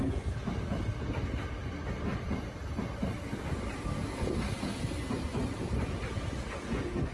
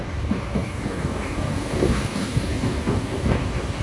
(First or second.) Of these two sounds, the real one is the first